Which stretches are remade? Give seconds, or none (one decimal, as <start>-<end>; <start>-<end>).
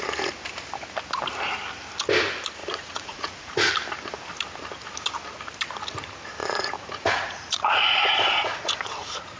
2.6-3.7; 6.4-9.4